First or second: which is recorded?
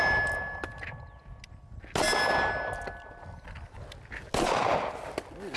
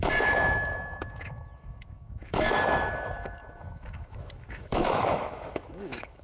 first